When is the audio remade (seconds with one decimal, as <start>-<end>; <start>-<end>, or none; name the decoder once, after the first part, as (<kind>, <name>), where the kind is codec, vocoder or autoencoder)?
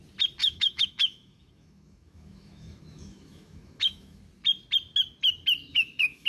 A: 0.4-4.2 (autoencoder, DAC-VAE); 5.7-6.3